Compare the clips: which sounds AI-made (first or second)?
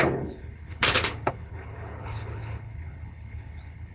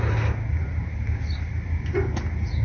first